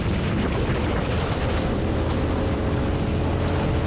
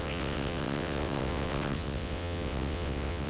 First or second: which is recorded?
first